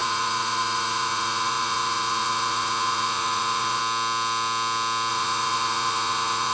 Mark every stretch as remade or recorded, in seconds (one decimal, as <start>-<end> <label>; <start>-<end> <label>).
0.0-3.8 remade; 3.8-5.1 recorded; 5.1-6.5 remade